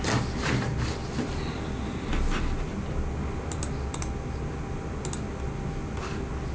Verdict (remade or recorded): recorded